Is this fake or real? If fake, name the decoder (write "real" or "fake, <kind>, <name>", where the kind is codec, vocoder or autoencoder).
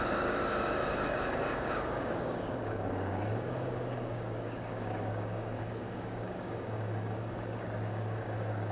fake, codec, DAC